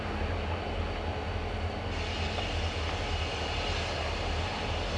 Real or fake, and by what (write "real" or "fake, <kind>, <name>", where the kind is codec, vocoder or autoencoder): real